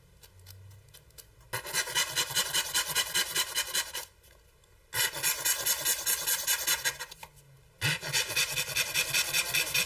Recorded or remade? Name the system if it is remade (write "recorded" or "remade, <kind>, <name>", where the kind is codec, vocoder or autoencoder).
recorded